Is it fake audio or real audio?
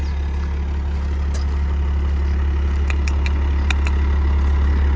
real